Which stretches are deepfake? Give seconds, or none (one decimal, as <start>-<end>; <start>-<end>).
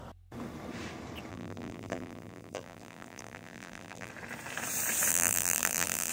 1.3-4.1; 5.1-6.1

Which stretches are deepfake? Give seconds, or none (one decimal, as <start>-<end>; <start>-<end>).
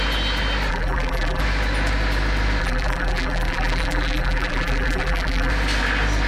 0.7-1.4; 2.6-5.5